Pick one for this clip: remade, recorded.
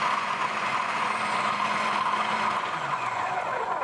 remade